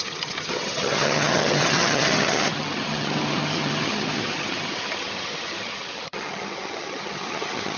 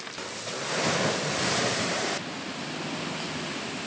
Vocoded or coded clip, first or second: first